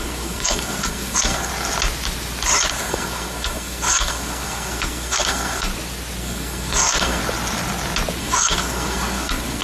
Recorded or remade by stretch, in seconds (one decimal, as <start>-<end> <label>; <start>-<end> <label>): 0.0-1.5 remade; 1.5-2.7 recorded; 2.7-5.7 remade; 5.7-6.2 recorded; 6.2-7.2 remade; 7.2-8.2 recorded; 8.2-9.6 remade